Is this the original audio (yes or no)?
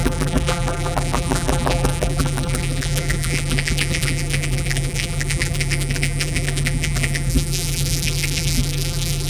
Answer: no